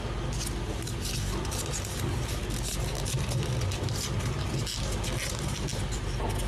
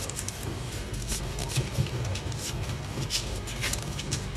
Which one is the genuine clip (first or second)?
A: first